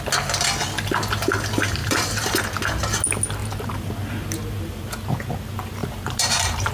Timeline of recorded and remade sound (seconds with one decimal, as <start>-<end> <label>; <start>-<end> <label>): 0.0-1.8 recorded; 1.8-2.4 remade; 2.4-3.4 recorded; 3.4-4.9 remade; 4.9-5.8 recorded; 5.8-6.7 remade